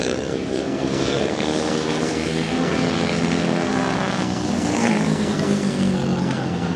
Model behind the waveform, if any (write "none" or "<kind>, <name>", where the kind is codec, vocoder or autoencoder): codec, SNAC